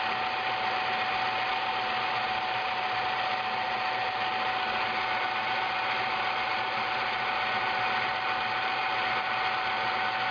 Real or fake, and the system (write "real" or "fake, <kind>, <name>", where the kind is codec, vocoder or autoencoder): real